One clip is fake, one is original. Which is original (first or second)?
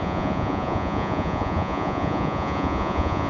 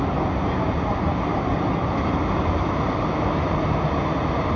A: second